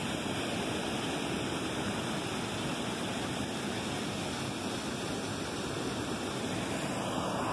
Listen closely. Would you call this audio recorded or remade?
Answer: recorded